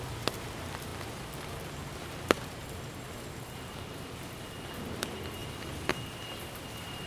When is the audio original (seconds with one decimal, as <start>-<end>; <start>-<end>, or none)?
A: 5.4-5.9